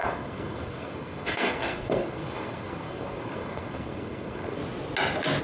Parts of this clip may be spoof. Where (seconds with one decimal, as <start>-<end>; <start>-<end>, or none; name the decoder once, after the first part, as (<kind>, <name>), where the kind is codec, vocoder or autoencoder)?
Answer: 0.0-4.6 (codec, SNAC)